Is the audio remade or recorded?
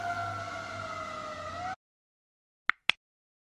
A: recorded